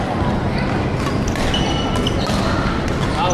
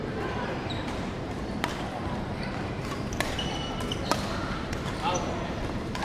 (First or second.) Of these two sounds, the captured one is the first